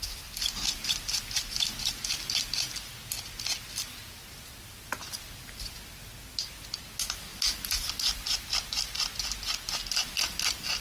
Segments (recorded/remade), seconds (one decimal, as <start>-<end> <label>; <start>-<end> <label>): 0.0-10.8 recorded